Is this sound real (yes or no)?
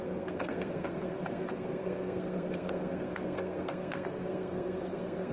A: no